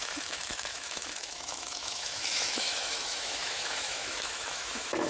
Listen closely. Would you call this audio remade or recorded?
remade